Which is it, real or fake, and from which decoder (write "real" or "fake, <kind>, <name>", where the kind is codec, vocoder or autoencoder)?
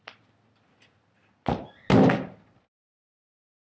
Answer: real